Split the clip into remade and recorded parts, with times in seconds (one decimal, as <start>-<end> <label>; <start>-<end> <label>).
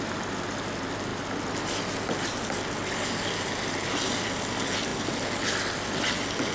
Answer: 0.0-6.5 recorded